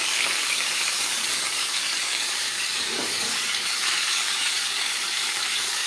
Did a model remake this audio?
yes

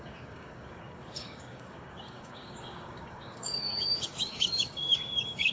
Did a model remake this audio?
yes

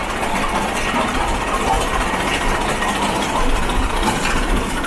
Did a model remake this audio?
no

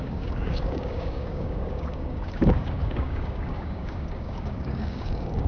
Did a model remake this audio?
yes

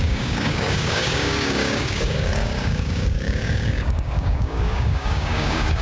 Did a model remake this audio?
yes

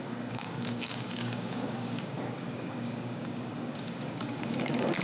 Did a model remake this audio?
yes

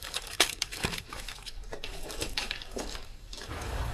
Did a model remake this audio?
yes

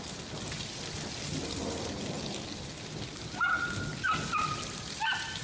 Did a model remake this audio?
no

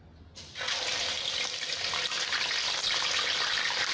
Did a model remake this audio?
no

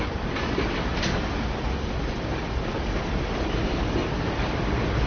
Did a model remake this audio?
no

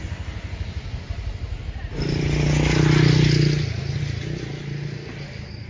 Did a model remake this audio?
no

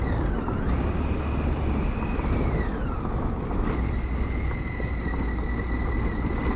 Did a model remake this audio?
no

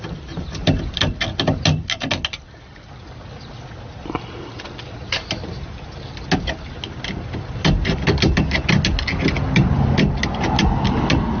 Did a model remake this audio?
no